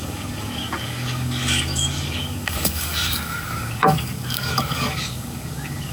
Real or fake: fake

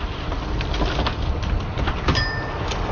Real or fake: real